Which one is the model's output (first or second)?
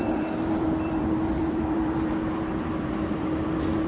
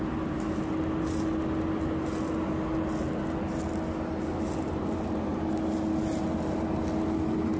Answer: first